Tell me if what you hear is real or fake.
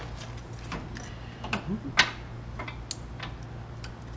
real